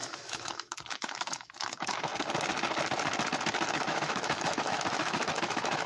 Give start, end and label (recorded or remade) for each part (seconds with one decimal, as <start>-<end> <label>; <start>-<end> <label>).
0.0-2.1 remade; 2.1-3.7 recorded; 3.7-5.9 remade